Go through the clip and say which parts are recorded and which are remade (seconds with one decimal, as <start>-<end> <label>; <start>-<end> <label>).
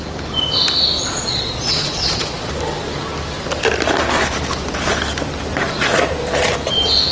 0.0-1.0 recorded; 1.0-2.5 remade; 2.5-7.1 recorded